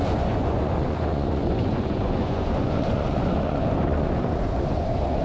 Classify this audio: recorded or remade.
remade